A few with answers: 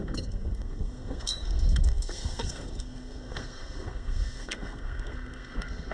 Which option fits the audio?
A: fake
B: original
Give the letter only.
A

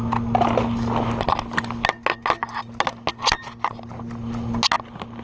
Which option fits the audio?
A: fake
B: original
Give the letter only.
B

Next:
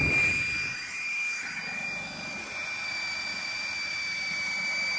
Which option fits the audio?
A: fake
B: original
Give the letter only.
B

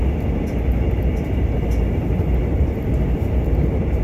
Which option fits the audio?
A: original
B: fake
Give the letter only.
A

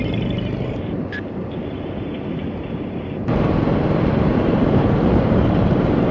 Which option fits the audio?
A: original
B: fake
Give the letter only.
B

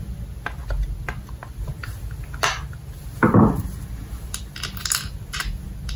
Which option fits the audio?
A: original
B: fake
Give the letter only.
A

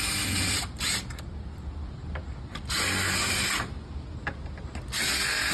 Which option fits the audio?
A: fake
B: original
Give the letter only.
B